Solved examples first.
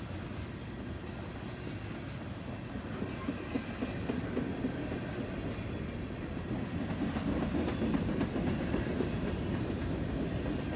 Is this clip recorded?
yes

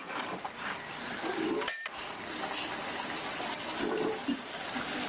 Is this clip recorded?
no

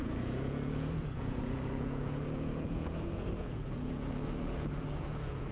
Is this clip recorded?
no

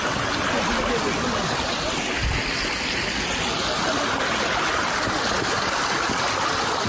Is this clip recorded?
yes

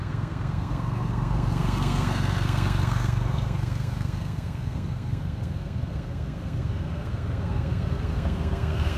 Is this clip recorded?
no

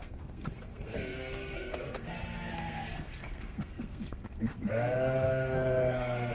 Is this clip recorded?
no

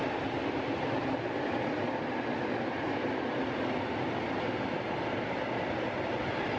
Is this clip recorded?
yes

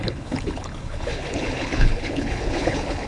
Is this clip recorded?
no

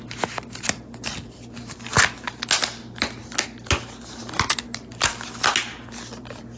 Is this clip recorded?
yes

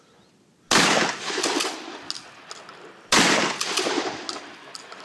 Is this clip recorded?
yes